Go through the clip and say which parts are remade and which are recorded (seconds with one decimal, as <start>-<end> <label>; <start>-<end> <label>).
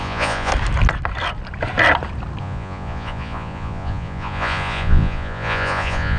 0.0-0.5 remade; 0.5-2.4 recorded; 2.4-6.2 remade